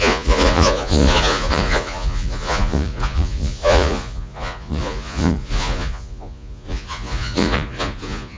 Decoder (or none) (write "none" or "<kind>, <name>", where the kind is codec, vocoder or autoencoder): vocoder, Vocos